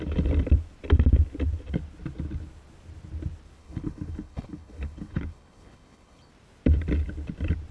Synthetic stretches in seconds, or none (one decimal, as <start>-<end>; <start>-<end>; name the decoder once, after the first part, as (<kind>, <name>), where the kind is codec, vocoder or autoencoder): 3.6-6.3 (codec, HILCodec)

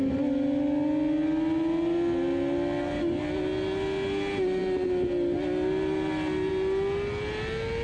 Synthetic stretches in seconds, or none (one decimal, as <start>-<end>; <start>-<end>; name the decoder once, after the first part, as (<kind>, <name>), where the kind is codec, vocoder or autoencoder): none

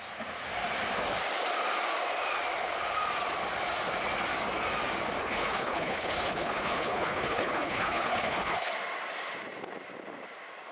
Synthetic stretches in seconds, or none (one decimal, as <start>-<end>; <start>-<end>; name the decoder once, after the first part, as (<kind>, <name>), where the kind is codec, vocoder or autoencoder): 5.2-8.7 (codec, HILCodec)